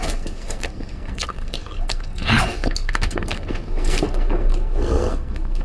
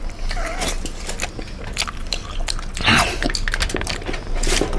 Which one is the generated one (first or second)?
first